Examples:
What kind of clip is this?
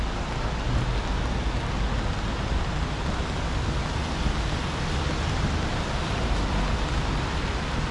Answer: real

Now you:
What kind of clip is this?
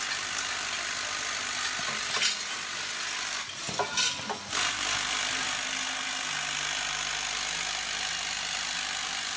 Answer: real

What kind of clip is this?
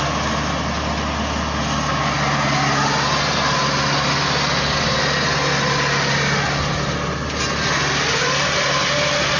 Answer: real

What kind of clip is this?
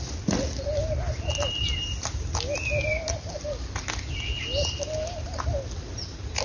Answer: real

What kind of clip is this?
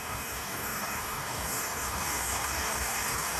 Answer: fake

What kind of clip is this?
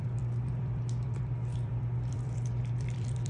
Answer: fake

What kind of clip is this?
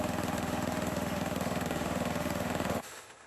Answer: fake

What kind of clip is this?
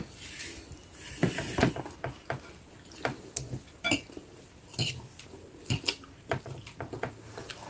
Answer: real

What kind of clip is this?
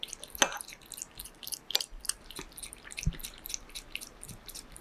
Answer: real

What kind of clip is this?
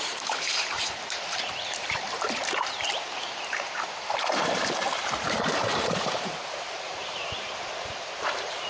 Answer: fake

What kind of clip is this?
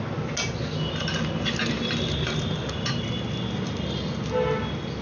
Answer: real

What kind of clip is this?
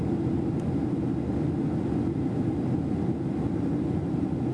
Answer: real